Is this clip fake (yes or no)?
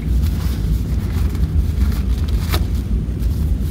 no